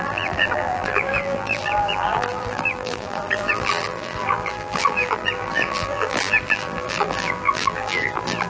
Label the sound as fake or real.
fake